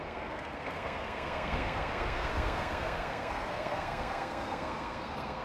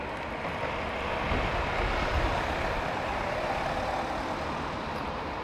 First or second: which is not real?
first